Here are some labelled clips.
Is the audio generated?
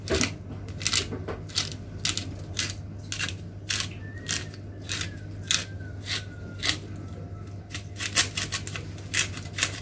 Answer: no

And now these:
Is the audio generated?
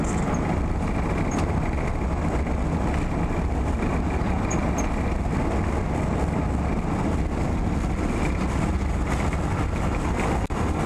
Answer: no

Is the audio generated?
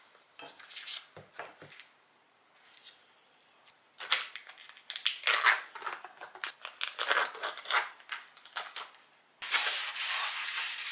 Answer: no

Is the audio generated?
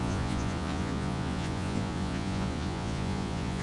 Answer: yes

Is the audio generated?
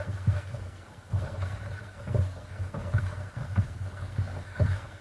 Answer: yes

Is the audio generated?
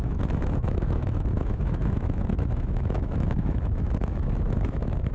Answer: yes